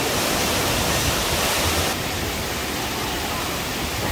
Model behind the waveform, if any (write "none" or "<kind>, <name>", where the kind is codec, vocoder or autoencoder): none